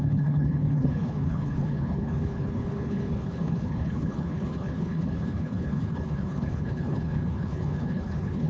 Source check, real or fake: fake